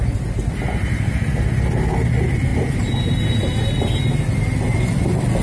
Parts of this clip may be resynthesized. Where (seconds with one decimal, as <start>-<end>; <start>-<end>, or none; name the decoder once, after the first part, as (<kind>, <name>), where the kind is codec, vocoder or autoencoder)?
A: none